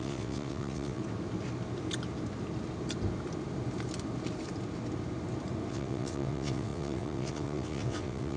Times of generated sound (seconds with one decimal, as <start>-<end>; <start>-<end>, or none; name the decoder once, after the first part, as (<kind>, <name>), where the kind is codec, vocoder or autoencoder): 0.0-1.0 (vocoder, WaveNeXt); 5.7-8.4